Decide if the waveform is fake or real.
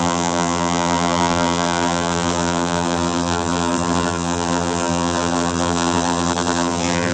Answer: fake